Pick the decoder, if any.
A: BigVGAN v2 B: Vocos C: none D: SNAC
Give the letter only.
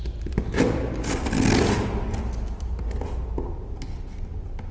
C